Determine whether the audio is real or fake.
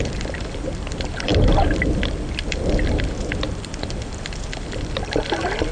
real